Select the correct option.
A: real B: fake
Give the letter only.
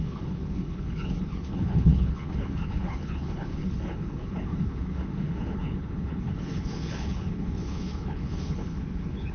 B